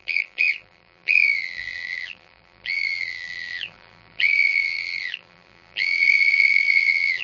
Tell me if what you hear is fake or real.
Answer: fake